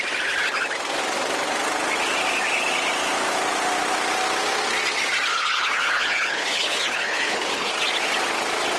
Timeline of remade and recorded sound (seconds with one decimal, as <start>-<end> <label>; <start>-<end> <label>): 0.0-5.3 recorded; 5.3-7.7 remade; 7.7-8.8 recorded